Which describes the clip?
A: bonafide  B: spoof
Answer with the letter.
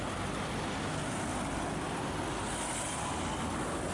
A